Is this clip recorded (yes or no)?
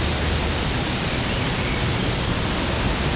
yes